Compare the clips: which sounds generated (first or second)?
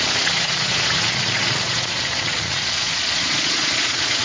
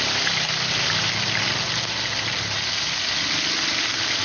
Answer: first